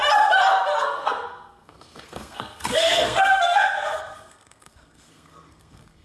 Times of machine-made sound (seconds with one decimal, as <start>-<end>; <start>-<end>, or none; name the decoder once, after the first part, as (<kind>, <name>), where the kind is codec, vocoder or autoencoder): 0.8-6.0 (codec, SNAC)